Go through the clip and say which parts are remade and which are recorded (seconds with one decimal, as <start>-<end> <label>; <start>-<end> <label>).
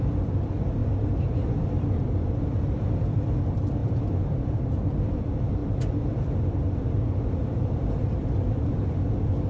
0.0-9.5 remade